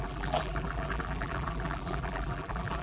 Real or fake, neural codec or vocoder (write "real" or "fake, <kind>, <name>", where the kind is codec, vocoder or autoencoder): fake, vocoder, BigVGAN v2